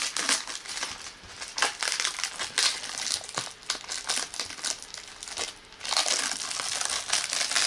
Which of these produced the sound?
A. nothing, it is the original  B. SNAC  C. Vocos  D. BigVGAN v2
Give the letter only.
A